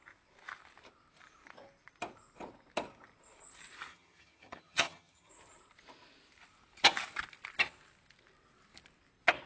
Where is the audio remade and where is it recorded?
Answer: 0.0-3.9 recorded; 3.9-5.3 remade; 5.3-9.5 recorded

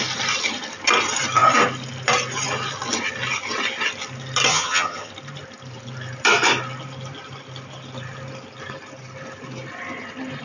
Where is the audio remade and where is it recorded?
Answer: 0.0-4.5 recorded; 4.5-5.1 remade; 5.1-10.4 recorded

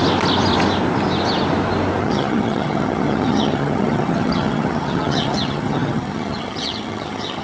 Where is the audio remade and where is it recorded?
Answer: 0.0-2.0 recorded; 2.0-7.4 remade

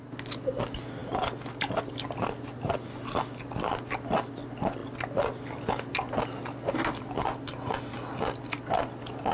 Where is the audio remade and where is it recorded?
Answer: 0.0-9.3 recorded

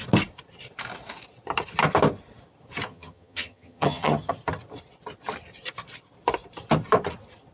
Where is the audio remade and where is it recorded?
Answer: 0.0-2.9 recorded; 2.9-4.3 remade; 4.3-7.5 recorded

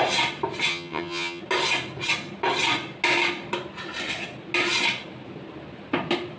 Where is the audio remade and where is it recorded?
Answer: 0.0-0.7 recorded; 0.7-1.4 remade; 1.4-6.4 recorded

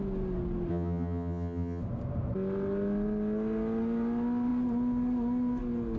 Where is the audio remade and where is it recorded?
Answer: 0.0-0.7 recorded; 0.7-1.8 remade; 1.8-6.0 recorded